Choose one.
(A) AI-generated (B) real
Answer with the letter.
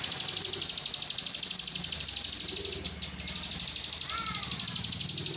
B